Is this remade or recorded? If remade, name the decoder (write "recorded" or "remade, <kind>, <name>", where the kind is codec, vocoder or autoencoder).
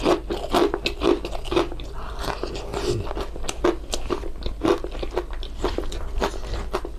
recorded